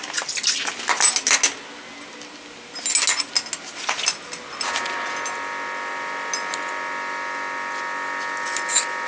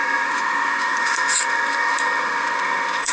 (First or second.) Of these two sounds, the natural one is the first